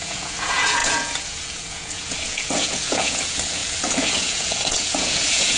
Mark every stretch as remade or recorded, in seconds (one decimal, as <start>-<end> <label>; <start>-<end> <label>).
0.0-5.6 remade